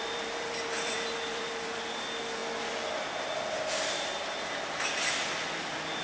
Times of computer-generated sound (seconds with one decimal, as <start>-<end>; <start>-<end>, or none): 0.0-2.4; 5.1-6.0